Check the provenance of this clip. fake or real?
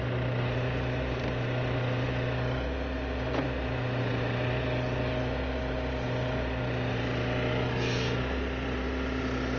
real